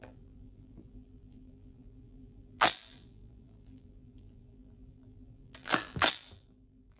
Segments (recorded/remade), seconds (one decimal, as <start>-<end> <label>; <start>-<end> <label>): 0.0-7.0 remade